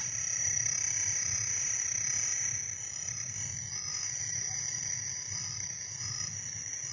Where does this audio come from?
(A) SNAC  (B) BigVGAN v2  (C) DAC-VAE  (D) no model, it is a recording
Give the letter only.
D